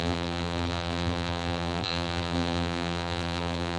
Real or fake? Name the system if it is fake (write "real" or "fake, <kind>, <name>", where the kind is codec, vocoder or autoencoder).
fake, vocoder, BigVGAN v2